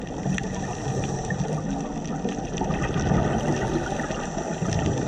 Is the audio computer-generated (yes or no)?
no